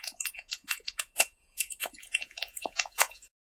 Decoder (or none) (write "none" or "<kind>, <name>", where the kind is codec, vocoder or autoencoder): vocoder, Vocos